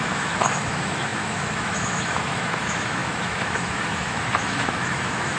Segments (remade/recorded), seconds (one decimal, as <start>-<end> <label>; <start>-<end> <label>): 0.0-5.4 remade